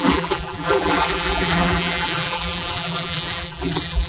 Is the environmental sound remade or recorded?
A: remade